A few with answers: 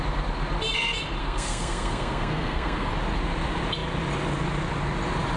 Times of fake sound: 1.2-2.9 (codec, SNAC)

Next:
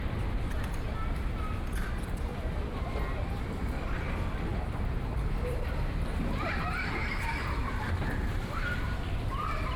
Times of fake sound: 0.0-9.8 (vocoder, BigVGAN v2)

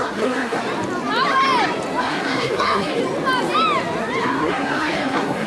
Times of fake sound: 0.0-0.6 (codec, SNAC); 2.0-3.0; 4.2-5.5

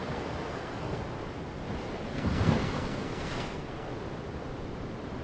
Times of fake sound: 0.0-1.0 (codec, SNAC); 2.1-3.9

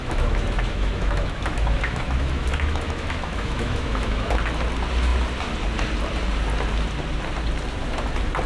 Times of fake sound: 0.0-4.3 (autoencoder, DAC-VAE)

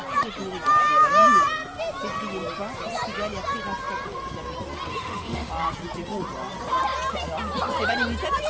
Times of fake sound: 4.9-5.5 (autoencoder, DAC-VAE)

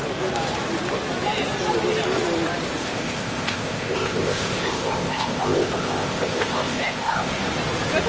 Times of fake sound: 2.8-7.3 (codec, ZipCodec)